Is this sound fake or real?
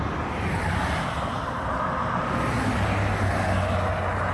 real